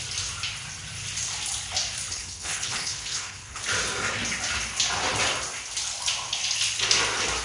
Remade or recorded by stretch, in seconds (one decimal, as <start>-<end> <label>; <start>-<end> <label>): 0.0-2.1 recorded; 2.1-3.6 remade; 3.6-7.4 recorded